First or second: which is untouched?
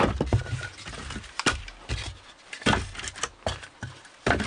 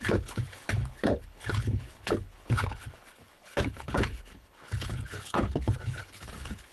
first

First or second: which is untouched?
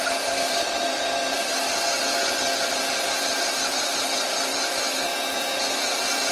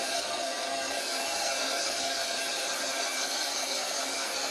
first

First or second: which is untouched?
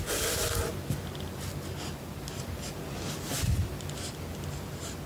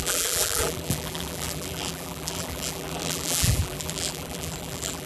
first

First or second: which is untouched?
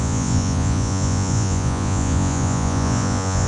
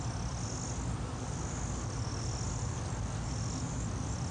second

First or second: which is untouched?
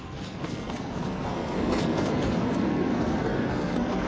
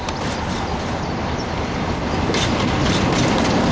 second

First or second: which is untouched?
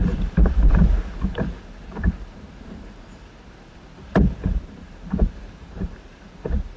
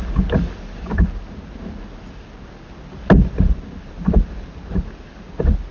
second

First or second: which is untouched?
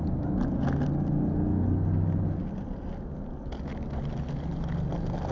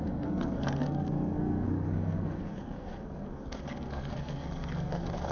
first